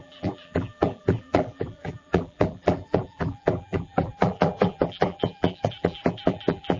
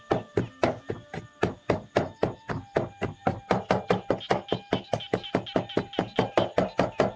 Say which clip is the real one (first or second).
second